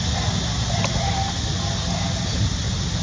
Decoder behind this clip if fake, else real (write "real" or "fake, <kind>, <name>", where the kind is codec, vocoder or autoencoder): real